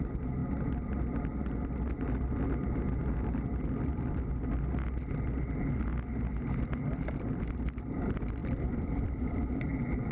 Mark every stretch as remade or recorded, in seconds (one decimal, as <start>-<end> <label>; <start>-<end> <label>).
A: 0.0-8.4 recorded; 8.4-10.1 remade